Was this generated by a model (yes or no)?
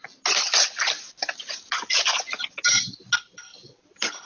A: no